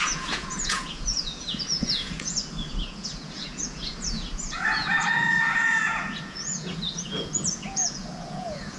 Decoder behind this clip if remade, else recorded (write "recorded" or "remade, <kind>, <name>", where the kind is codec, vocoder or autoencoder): remade, vocoder, Vocos